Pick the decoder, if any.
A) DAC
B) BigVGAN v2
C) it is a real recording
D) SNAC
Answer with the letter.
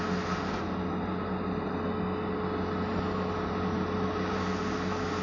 C